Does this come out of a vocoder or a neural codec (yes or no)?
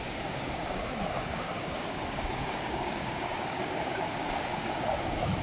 yes